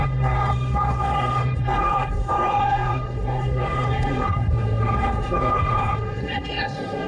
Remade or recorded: remade